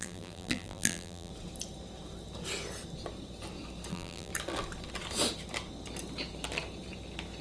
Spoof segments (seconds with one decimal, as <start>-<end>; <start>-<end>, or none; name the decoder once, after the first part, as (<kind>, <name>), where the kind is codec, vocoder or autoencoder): 0.0-1.3 (vocoder, BigVGAN v2); 3.9-4.3